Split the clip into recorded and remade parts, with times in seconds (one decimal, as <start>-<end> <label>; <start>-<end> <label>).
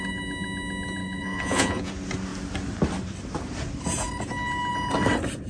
0.0-1.0 recorded; 1.0-1.9 remade; 1.9-5.5 recorded